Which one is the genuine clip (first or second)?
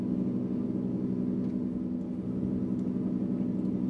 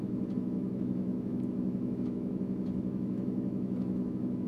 first